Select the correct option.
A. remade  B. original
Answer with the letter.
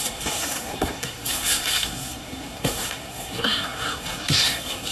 A